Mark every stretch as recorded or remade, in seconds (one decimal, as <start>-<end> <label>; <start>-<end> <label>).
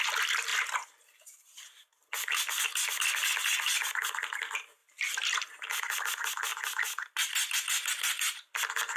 0.0-0.5 recorded; 0.5-2.6 remade; 2.6-4.8 recorded; 4.8-6.0 remade; 6.0-9.0 recorded